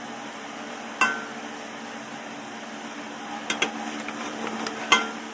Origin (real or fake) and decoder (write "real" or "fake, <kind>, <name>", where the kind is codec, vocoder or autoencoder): real